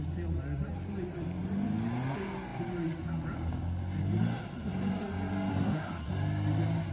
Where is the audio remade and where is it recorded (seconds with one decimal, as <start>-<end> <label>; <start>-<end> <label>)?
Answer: 0.0-5.5 recorded; 5.5-6.1 remade; 6.1-6.9 recorded